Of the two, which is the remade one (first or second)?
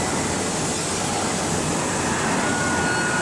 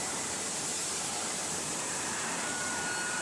second